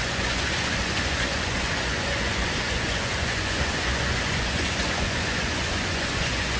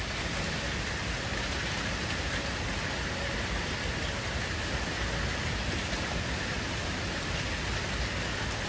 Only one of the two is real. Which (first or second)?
second